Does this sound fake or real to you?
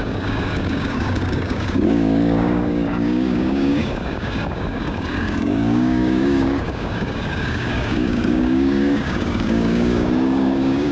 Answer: fake